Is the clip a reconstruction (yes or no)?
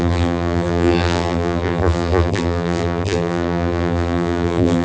yes